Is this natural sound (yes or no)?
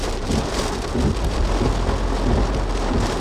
yes